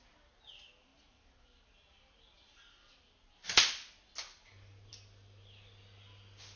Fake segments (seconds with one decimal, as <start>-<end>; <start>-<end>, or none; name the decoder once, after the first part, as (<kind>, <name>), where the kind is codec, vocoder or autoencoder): none